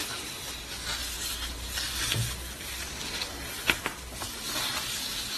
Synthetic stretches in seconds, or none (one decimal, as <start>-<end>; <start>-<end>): none